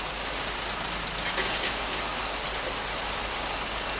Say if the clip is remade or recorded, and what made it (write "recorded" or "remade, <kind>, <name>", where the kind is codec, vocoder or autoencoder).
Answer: recorded